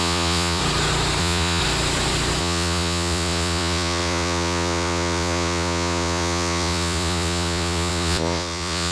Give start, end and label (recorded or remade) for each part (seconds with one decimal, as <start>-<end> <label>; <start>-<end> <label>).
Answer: 0.0-0.6 remade; 0.6-1.2 recorded; 1.2-1.6 remade; 1.6-2.4 recorded; 2.4-8.9 remade